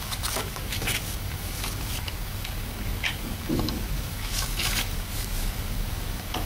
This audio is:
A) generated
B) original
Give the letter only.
A